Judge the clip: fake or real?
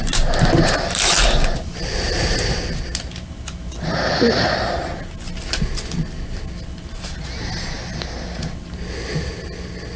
real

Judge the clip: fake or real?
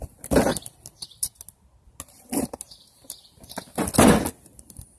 real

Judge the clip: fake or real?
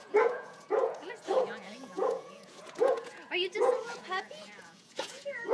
fake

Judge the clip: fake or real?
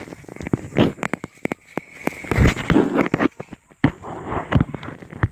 real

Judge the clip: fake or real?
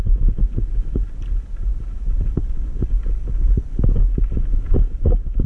real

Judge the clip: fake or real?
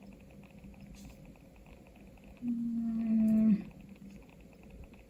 real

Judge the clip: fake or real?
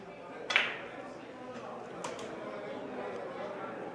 real